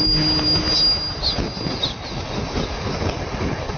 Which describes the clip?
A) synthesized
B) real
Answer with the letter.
B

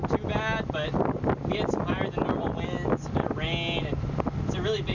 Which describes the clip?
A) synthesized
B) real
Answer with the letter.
B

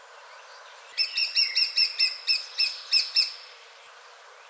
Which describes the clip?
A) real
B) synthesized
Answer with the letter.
A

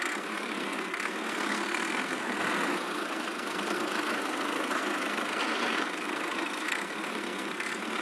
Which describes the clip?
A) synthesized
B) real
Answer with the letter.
A